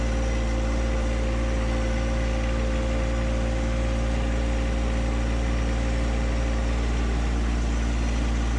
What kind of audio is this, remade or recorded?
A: recorded